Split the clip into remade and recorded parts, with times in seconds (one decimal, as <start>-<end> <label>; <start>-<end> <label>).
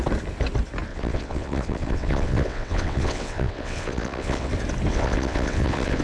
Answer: 0.0-0.9 recorded; 0.9-4.5 remade; 4.5-4.9 recorded; 4.9-6.0 remade